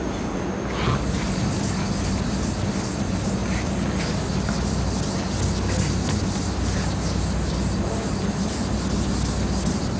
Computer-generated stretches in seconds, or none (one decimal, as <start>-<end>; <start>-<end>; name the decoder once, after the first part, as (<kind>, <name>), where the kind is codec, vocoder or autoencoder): none